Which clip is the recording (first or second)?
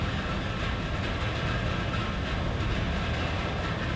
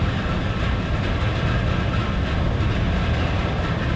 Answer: first